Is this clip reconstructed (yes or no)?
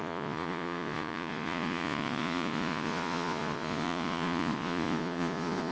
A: yes